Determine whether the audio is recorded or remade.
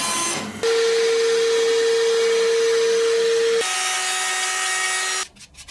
recorded